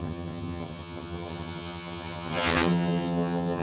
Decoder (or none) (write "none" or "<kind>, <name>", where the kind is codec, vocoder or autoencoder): vocoder, HiFi-GAN